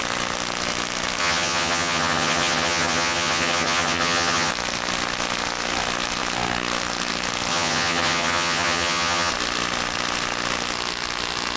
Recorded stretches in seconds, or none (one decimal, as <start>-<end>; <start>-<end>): 0.0-1.2; 4.5-7.5; 9.3-11.6